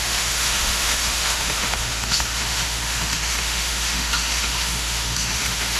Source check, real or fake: fake